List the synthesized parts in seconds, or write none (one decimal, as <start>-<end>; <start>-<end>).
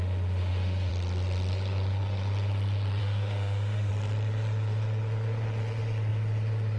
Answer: 0.0-0.9; 3.0-3.9